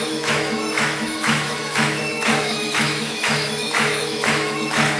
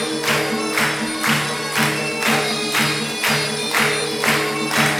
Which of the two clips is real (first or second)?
second